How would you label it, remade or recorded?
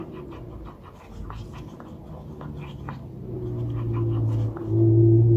recorded